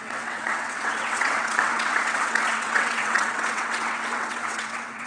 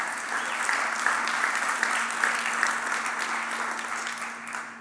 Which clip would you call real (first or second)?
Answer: second